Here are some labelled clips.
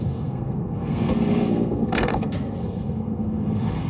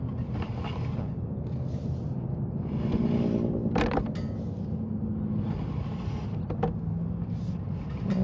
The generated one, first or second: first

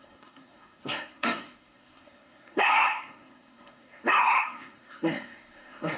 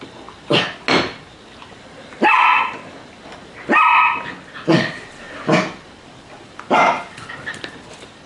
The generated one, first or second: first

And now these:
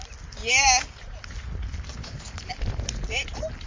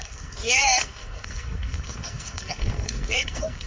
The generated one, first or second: second